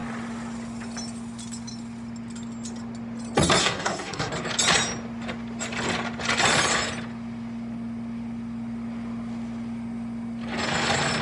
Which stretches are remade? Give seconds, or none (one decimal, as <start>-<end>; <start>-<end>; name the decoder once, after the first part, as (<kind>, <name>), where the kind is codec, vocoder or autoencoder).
3.6-4.3 (codec, SNAC)